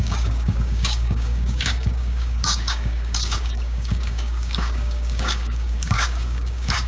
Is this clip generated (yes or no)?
yes